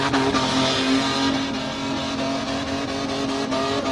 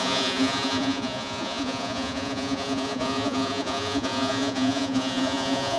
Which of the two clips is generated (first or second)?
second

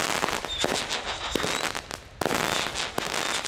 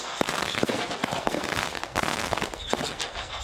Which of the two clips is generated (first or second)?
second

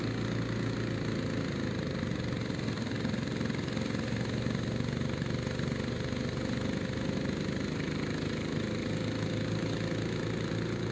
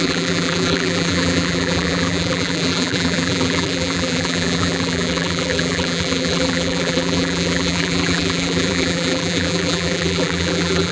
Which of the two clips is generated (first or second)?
second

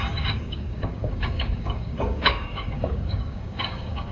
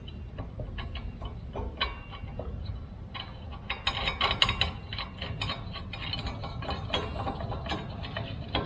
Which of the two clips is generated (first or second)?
first